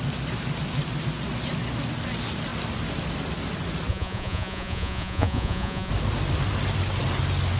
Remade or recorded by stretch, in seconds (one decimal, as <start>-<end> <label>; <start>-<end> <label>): 0.0-3.9 recorded; 3.9-5.9 remade; 5.9-7.6 recorded